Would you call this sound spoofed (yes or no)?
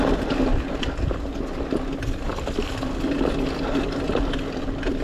no